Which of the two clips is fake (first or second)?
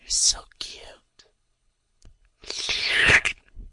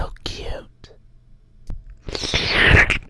first